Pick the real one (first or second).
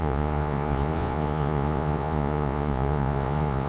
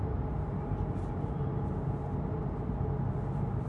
second